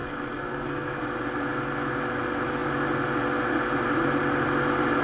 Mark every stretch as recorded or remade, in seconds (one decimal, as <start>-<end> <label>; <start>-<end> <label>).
0.0-1.0 remade; 1.0-5.0 recorded